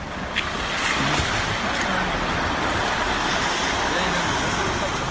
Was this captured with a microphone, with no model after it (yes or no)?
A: yes